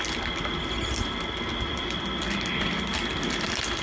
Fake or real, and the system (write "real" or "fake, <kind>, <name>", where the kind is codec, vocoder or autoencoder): real